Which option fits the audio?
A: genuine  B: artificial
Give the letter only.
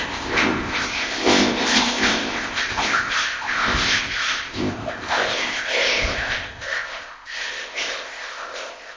B